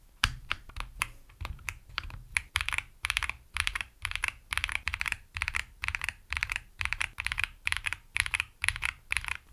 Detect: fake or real fake